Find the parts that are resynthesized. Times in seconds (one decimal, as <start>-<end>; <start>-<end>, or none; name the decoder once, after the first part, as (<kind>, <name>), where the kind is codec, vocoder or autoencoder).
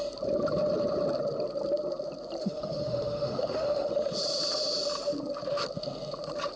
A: 2.4-3.9 (autoencoder, DAC-VAE)